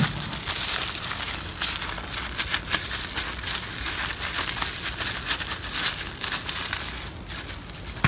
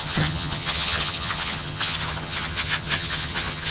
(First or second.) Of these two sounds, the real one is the first